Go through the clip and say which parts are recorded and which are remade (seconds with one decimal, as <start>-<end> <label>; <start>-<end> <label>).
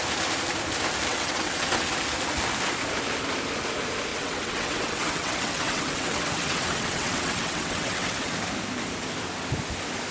0.0-1.1 recorded; 1.1-1.9 remade; 1.9-4.1 recorded; 4.1-8.3 remade; 8.3-10.1 recorded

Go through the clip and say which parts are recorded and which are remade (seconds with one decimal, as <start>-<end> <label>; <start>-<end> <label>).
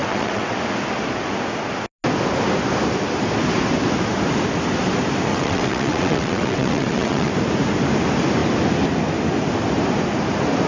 0.0-0.5 remade; 0.5-5.3 recorded; 5.3-7.3 remade; 7.3-10.7 recorded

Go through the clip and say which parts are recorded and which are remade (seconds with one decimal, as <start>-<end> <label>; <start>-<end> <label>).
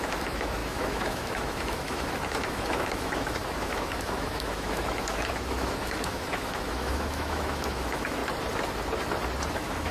0.0-8.2 remade; 8.2-9.5 recorded; 9.5-9.9 remade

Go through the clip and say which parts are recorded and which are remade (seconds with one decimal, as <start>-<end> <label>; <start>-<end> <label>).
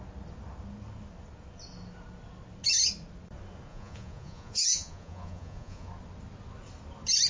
0.0-3.7 recorded; 3.7-5.9 remade; 5.9-7.3 recorded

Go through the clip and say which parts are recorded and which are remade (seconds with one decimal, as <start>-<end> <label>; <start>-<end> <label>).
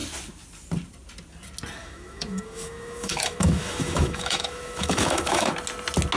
0.0-1.8 recorded; 1.8-5.5 remade; 5.5-6.2 recorded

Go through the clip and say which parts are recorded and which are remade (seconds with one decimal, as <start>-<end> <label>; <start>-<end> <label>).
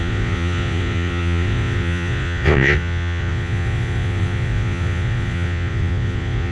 0.0-6.5 remade